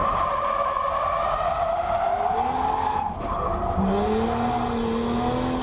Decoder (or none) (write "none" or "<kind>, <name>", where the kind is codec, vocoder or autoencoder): none